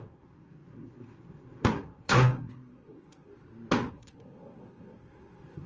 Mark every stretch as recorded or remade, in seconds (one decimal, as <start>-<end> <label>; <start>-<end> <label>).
0.0-3.3 remade; 3.3-3.9 recorded; 3.9-5.7 remade